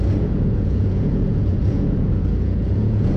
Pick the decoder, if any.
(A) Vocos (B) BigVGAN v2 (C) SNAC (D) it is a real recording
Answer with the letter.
A